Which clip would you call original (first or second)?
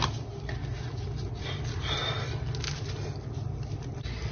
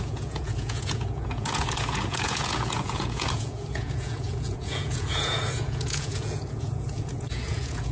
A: first